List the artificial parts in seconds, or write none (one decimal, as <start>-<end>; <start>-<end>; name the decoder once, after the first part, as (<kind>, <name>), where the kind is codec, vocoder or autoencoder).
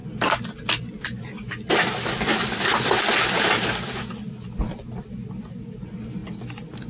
none